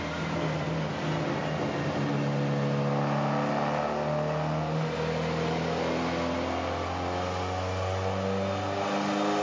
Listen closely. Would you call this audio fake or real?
real